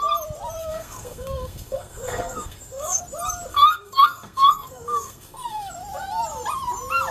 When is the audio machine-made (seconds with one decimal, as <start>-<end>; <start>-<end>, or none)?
0.6-3.0; 3.5-5.7